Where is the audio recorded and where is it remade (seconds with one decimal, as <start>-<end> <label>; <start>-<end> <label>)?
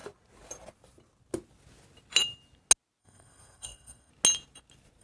0.0-3.0 recorded; 3.0-4.1 remade; 4.1-5.0 recorded